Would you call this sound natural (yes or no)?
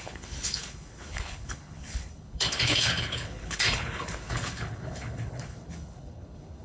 no